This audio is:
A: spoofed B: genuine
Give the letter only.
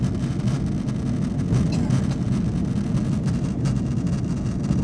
B